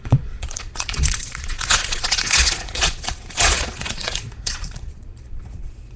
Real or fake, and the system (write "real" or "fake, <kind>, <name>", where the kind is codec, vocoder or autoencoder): fake, vocoder, Vocos